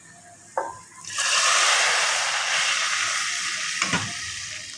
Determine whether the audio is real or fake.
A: real